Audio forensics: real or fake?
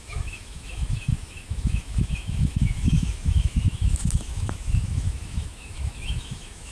fake